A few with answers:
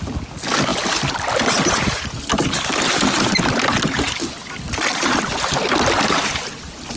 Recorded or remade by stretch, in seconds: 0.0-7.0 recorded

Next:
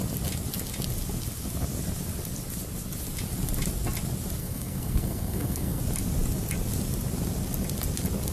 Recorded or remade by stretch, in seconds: 0.0-4.4 recorded; 4.4-5.8 remade; 5.8-8.3 recorded

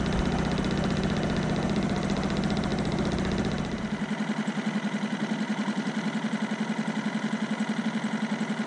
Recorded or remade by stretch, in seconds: 0.0-8.7 recorded

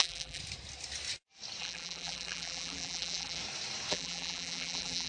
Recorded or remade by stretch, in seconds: 0.0-0.4 remade; 0.4-1.6 recorded; 1.6-3.4 remade; 3.4-3.9 recorded; 3.9-5.1 remade

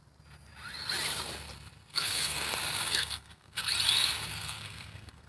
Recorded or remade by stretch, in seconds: 0.0-1.9 recorded; 1.9-2.5 remade; 2.5-2.9 recorded; 2.9-3.7 remade; 3.7-4.3 recorded; 4.3-5.3 remade

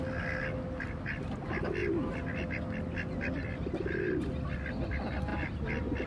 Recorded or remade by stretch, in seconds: 0.0-6.1 recorded